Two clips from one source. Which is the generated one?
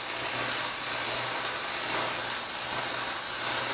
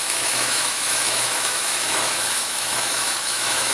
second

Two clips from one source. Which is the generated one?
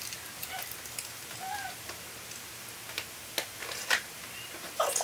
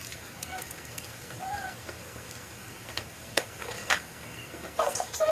second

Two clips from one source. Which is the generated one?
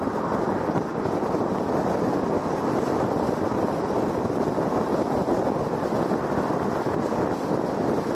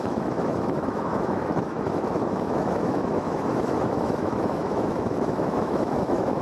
second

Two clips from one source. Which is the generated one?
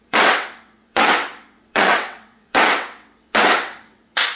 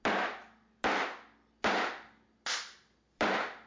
first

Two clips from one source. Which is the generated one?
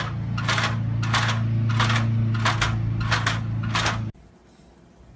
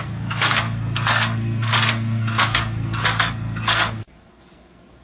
second